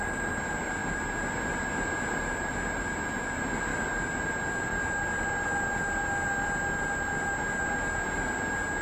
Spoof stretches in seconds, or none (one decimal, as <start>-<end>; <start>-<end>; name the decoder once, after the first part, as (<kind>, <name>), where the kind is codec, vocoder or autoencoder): none